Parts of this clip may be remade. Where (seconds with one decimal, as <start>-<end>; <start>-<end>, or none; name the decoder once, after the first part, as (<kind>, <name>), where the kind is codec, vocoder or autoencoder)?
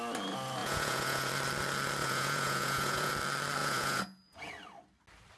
0.6-1.3 (vocoder, Vocos); 2.0-3.1; 3.6-4.5